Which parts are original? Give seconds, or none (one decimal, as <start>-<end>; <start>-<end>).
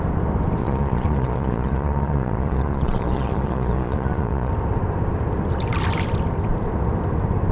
0.0-0.6; 4.5-7.5